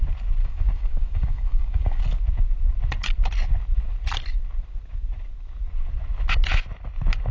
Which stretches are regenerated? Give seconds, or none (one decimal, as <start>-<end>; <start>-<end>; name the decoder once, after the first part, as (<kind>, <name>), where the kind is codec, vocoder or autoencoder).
0.4-2.0 (codec, DAC)